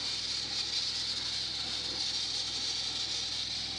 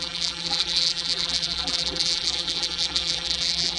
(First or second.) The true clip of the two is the first